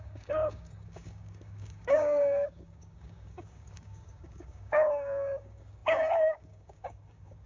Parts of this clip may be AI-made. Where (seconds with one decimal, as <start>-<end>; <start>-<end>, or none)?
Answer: 0.0-7.5